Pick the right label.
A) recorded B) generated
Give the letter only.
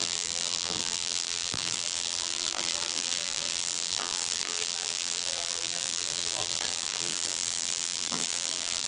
B